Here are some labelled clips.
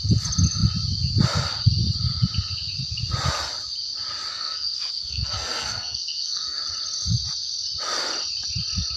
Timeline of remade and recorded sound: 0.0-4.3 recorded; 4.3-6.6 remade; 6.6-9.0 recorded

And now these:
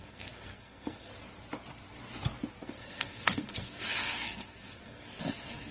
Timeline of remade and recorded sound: 0.0-1.1 remade; 1.1-2.6 recorded; 2.6-5.7 remade

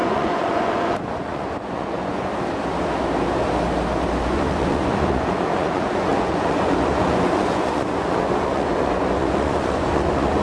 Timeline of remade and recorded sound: 0.0-2.3 remade; 2.3-4.2 recorded; 4.2-10.4 remade

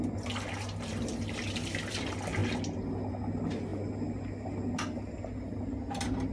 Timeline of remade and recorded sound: 0.0-6.3 recorded

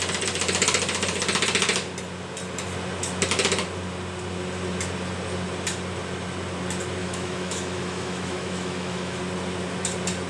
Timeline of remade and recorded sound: 0.0-7.0 recorded; 7.0-9.2 remade; 9.2-10.3 recorded

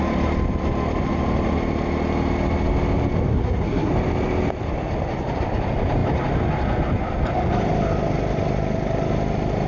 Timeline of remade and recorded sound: 0.0-3.3 recorded; 3.3-3.9 remade; 3.9-9.7 recorded